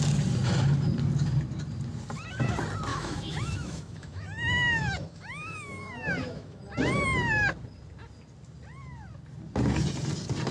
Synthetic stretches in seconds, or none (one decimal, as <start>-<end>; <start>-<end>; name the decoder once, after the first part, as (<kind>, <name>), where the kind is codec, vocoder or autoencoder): 2.9-6.6 (autoencoder, DAC-VAE)